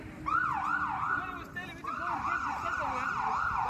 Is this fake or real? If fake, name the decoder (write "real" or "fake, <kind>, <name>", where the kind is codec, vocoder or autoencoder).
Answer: real